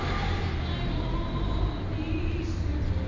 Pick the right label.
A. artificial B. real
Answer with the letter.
B